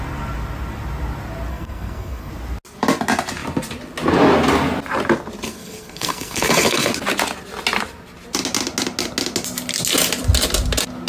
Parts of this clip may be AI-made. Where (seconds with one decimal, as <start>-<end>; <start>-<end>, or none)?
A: 1.5-2.3; 5.5-6.9